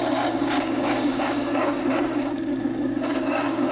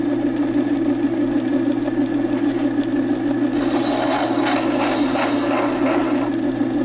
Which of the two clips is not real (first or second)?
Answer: first